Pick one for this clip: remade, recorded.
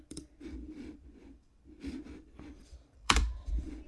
remade